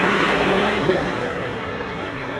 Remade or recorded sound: remade